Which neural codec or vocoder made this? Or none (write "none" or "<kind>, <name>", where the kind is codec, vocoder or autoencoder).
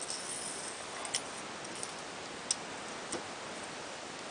none